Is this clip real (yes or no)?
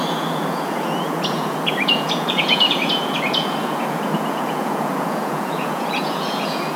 no